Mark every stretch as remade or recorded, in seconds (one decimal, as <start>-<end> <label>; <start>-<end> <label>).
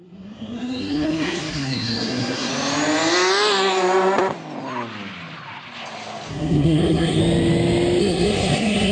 0.0-2.5 remade; 2.5-6.3 recorded; 6.3-7.2 remade; 7.2-8.0 recorded; 8.0-8.9 remade